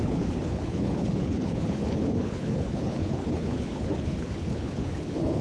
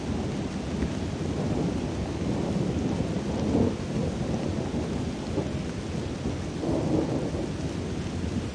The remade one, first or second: first